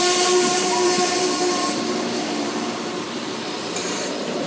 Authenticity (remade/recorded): remade